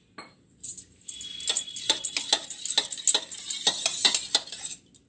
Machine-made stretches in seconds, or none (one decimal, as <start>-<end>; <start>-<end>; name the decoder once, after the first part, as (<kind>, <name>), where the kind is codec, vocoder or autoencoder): none